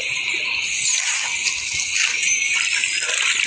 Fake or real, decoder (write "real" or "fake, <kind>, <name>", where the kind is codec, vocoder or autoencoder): real